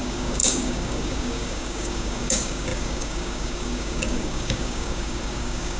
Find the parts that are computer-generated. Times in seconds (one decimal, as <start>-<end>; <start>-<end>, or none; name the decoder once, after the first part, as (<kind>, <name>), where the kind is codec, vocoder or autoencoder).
0.0-5.8 (codec, DAC)